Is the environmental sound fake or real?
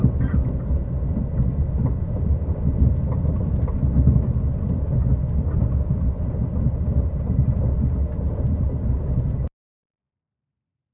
real